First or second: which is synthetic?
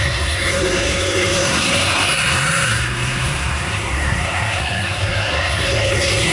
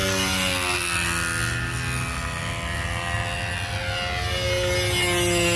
first